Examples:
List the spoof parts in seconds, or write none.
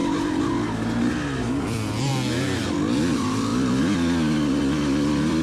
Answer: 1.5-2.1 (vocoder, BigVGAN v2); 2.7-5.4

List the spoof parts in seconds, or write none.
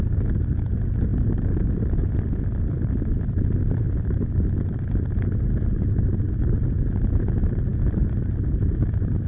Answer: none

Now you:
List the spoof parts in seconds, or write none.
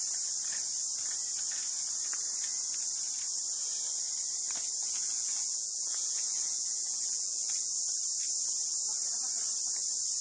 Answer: 4.8-7.7 (vocoder, Vocos)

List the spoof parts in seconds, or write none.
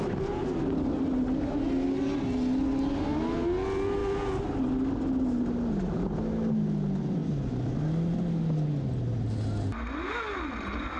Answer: none